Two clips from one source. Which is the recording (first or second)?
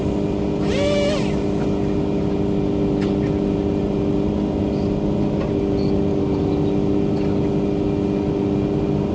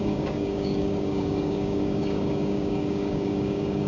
first